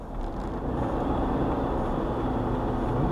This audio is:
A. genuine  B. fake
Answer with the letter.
A